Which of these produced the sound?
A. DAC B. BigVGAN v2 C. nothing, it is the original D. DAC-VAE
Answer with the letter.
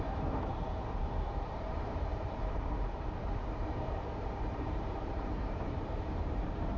B